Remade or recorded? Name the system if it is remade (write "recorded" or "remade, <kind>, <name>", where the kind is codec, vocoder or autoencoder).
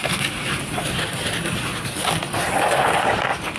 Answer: recorded